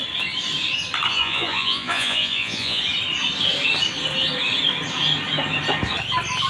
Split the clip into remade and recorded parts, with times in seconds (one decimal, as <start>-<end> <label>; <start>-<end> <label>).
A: 0.0-1.1 recorded; 1.1-2.8 remade; 2.8-6.5 recorded